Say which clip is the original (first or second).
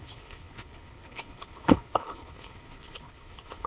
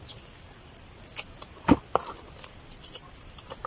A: second